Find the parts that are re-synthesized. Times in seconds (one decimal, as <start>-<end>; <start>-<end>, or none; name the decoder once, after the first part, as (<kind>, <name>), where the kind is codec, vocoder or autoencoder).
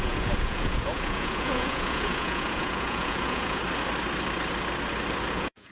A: 0.0-3.6 (vocoder, Vocos); 5.3-5.7